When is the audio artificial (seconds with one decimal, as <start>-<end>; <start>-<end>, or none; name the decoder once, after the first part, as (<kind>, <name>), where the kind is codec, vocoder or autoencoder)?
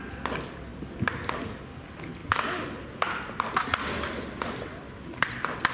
none